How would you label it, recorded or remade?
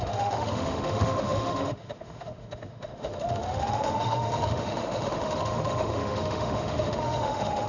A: remade